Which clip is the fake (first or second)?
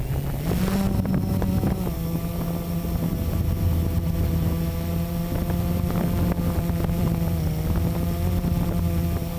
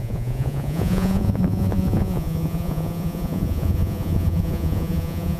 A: second